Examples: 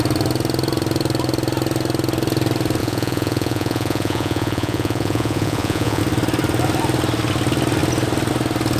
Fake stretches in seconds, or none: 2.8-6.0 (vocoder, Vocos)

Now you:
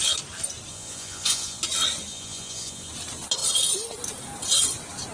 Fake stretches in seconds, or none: 0.7-1.6 (vocoder, Vocos); 2.1-2.9

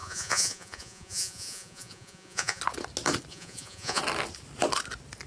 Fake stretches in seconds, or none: 0.0-2.6 (vocoder, Vocos); 3.3-4.0

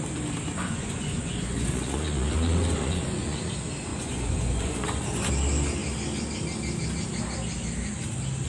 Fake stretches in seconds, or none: 0.6-3.5 (vocoder, Vocos); 3.9-5.3

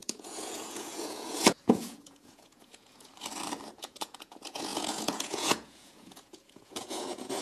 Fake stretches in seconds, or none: 0.0-3.1 (vocoder, Vocos); 3.7-7.4

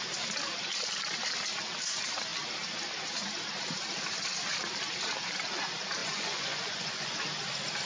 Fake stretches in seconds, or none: 6.0-7.2 (vocoder, Vocos)

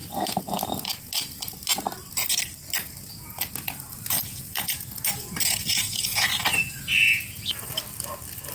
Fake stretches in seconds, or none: 4.3-7.7 (vocoder, Vocos)